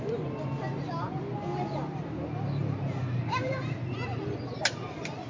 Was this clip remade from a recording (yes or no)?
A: no